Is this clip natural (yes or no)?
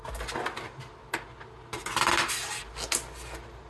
yes